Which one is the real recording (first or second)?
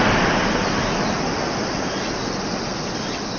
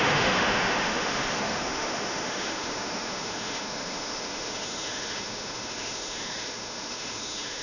first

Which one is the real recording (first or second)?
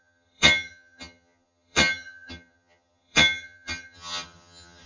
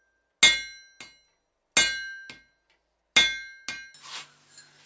second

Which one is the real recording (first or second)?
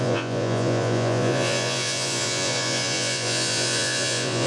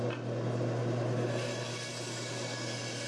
second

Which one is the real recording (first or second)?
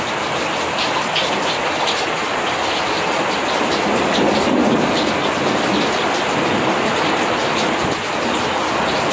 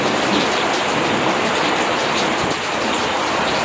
first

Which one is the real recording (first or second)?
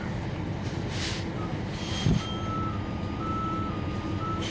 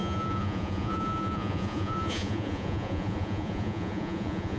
first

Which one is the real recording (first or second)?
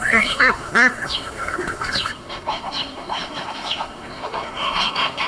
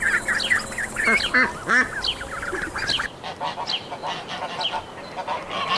second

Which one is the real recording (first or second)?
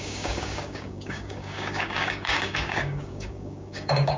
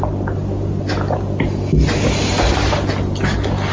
second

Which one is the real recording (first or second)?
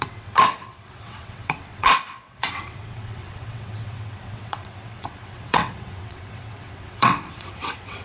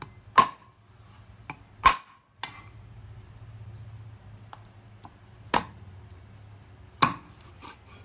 second